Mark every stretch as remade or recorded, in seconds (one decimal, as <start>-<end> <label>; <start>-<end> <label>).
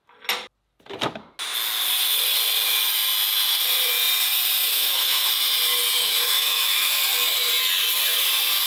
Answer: 0.0-4.7 recorded; 4.7-5.3 remade; 5.3-6.0 recorded; 6.0-6.9 remade; 6.9-8.7 recorded